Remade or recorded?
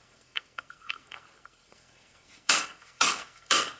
remade